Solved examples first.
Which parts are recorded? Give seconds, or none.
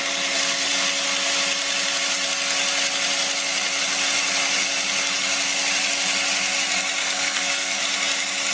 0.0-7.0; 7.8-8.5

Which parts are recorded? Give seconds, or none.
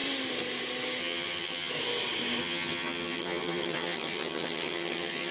0.0-1.0; 1.7-2.4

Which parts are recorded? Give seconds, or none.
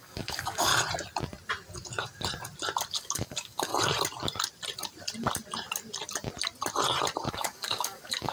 0.7-2.9; 3.7-7.3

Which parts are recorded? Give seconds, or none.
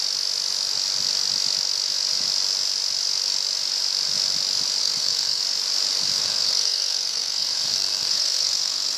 0.0-4.8; 5.4-6.2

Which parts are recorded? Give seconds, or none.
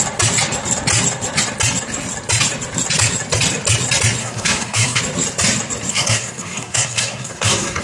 0.0-4.2; 5.0-5.9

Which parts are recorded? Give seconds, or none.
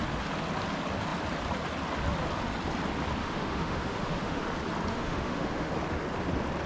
0.0-3.2; 4.4-4.9; 5.7-6.7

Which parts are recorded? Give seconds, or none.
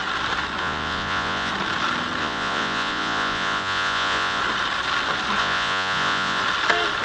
0.0-0.6; 1.5-2.2; 4.4-5.4; 6.4-7.0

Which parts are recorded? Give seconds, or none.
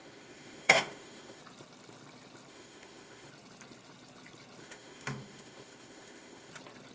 1.4-2.5; 3.3-4.6; 6.5-6.9